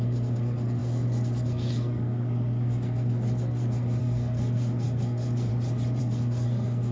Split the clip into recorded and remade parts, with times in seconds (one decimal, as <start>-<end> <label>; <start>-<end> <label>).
0.0-5.5 remade; 5.5-6.0 recorded; 6.0-6.9 remade